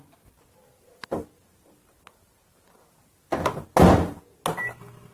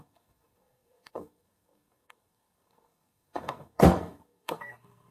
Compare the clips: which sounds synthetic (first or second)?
second